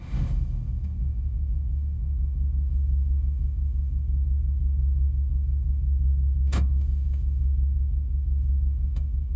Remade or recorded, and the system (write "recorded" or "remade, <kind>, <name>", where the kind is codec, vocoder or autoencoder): remade, autoencoder, DAC-VAE